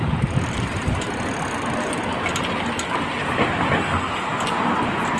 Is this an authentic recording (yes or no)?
yes